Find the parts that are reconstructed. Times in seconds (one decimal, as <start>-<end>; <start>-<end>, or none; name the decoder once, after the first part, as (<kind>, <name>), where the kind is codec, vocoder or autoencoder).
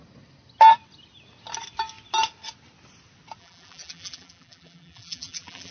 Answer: 3.4-5.7 (vocoder, BigVGAN v2)